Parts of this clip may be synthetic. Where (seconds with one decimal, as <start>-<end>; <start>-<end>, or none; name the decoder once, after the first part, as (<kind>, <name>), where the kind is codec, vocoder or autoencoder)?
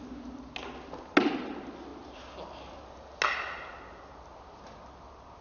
none